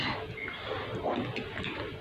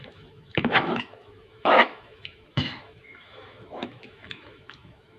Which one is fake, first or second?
second